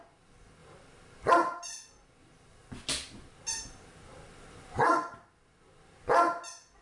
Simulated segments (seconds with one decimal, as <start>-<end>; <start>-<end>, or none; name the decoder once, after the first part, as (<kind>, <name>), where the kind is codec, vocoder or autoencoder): 3.5-5.4 (vocoder, BigVGAN v2)